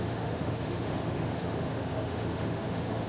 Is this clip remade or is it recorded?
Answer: remade